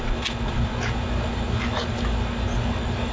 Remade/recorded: recorded